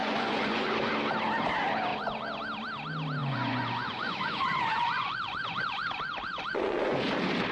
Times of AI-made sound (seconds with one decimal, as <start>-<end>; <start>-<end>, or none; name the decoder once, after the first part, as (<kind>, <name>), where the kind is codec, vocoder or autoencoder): 0.0-0.9 (vocoder, Vocos); 1.9-2.4; 3.2-7.0